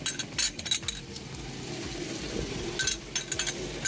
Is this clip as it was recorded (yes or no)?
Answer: yes